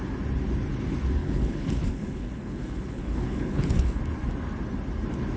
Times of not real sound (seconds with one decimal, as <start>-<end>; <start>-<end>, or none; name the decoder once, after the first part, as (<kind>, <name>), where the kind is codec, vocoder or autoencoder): 1.2-4.0 (codec, HILCodec)